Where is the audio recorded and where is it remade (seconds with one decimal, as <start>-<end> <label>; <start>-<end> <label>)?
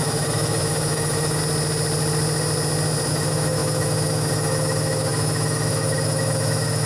0.0-1.4 remade; 1.4-3.1 recorded; 3.1-6.9 remade